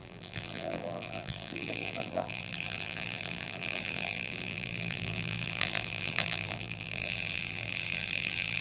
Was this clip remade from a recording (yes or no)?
yes